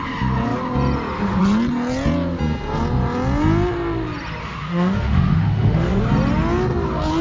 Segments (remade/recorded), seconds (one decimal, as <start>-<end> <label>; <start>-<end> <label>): 0.0-4.4 recorded; 4.4-6.0 remade; 6.0-7.2 recorded